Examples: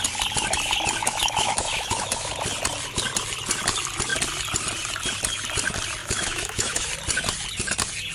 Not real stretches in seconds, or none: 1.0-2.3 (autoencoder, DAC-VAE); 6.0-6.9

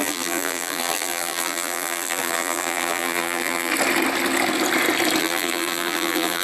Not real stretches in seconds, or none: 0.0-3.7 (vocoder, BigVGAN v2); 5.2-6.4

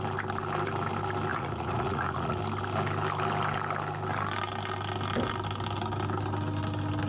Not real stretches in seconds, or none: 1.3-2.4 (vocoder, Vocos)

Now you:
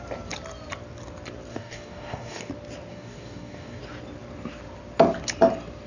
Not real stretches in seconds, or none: 1.5-2.5 (codec, DAC); 2.9-3.8

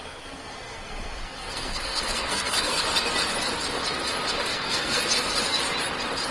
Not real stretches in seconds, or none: 0.0-2.8 (codec, SNAC); 4.5-5.0

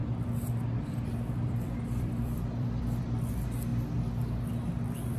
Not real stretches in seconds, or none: 0.0-3.0 (vocoder, BigVGAN v2)

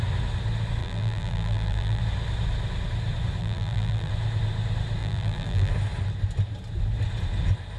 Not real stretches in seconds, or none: 0.8-2.0 (vocoder, BigVGAN v2); 3.4-4.1; 5.0-5.7

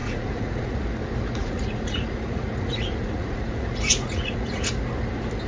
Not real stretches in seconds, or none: 0.0-0.9 (vocoder, Vocos); 1.4-4.7